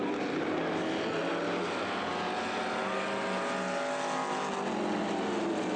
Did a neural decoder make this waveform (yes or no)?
no